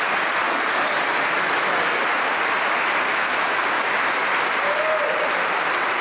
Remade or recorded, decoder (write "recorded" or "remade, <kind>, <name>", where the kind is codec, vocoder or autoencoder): recorded